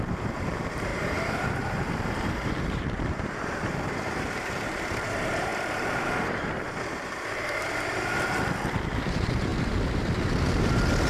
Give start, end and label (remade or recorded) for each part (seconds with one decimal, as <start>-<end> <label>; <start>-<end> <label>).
0.0-11.1 remade